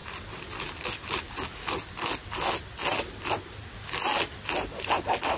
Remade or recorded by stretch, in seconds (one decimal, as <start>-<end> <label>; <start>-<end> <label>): 0.0-5.4 recorded